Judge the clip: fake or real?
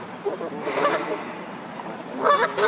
real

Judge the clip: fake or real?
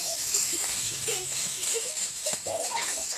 fake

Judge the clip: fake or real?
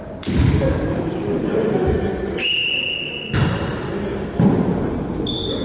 real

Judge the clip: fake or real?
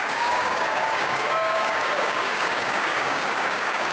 fake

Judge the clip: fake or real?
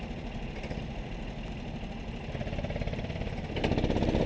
real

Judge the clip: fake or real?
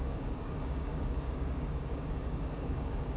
fake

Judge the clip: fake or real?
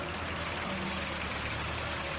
real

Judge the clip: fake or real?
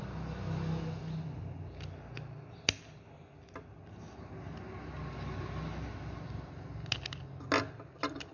real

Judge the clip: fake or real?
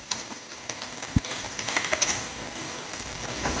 fake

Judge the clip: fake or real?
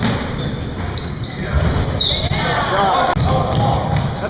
real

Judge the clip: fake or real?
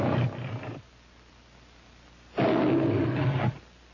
real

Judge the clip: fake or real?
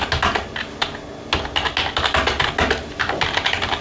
real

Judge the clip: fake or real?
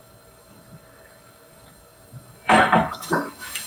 fake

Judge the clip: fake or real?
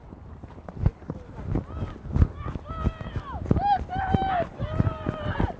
real